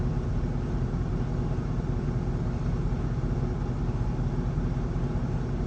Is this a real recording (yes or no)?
yes